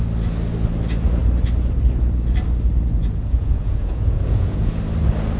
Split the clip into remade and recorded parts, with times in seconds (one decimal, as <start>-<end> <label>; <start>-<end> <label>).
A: 0.0-3.0 recorded; 3.0-4.8 remade; 4.8-5.4 recorded